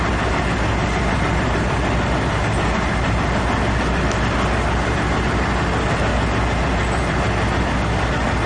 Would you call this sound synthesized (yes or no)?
no